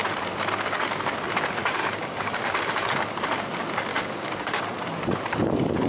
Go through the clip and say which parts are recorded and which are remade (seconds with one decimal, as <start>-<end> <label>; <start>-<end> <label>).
0.0-1.8 recorded; 1.8-2.5 remade; 2.5-3.9 recorded; 3.9-4.6 remade; 4.6-5.9 recorded